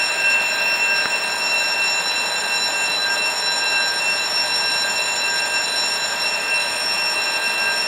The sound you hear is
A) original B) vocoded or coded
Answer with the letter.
A